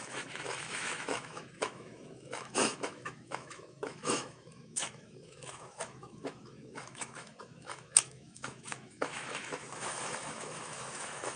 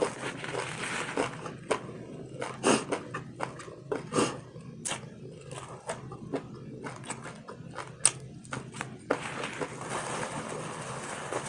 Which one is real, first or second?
second